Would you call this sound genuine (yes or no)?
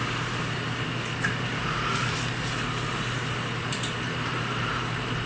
yes